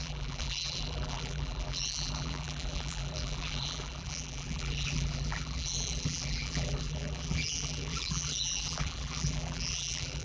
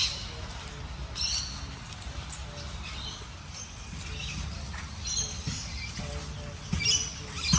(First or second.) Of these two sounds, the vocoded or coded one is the first